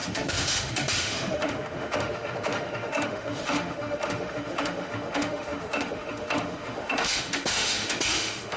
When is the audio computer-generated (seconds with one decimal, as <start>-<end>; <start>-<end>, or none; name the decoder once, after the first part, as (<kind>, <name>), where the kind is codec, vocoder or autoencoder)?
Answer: 0.0-8.6 (autoencoder, DAC-VAE)

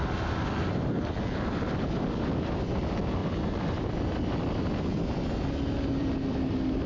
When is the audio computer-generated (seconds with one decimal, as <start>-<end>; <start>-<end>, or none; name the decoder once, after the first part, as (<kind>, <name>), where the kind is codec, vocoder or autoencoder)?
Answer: none

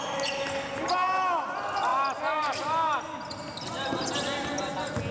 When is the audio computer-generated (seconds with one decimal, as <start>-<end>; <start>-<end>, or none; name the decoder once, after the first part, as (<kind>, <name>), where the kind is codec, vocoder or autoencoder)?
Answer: 1.9-3.6 (vocoder, BigVGAN v2)

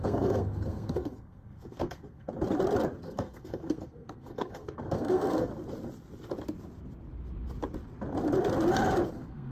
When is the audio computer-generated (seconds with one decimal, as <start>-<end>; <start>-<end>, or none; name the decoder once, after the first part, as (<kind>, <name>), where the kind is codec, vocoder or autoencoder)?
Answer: 0.0-2.3 (codec, SNAC); 3.0-5.5; 9.1-9.5

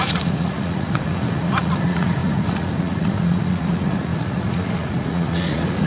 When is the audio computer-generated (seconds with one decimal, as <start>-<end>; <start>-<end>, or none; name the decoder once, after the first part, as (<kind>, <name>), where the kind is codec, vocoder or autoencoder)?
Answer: 0.0-5.9 (vocoder, Vocos)

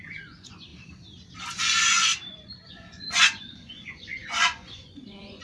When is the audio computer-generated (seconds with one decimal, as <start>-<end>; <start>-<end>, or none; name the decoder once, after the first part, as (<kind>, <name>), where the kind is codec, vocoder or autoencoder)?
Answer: 0.0-0.7 (vocoder, Vocos); 1.4-2.1; 2.7-5.4